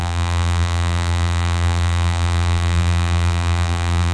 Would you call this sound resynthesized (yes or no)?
yes